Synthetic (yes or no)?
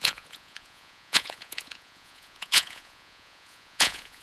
yes